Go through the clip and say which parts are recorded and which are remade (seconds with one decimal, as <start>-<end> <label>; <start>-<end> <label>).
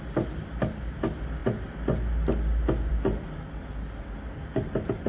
0.0-5.1 recorded